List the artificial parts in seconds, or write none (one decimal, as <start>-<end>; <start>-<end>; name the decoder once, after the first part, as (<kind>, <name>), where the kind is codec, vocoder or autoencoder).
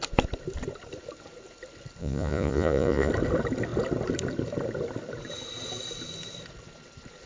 2.0-3.1 (vocoder, Vocos)